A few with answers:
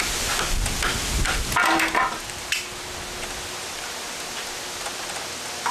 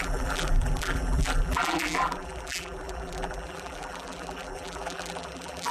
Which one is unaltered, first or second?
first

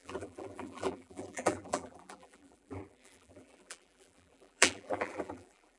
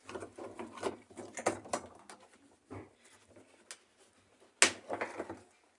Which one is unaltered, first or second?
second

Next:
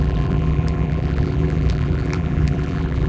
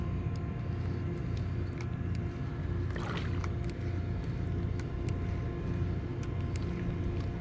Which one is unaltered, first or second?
second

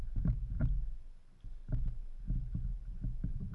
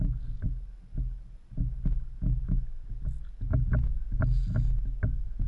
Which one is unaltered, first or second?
second